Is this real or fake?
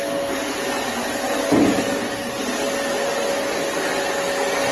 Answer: real